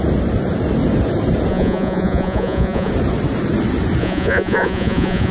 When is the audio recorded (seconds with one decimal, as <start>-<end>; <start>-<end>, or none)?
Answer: 0.0-1.5; 2.9-4.0